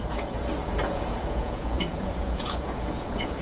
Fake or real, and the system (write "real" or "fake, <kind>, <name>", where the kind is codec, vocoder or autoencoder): fake, vocoder, Vocos